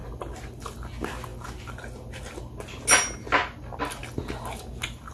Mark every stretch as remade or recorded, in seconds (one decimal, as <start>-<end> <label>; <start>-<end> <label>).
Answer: 0.0-5.1 recorded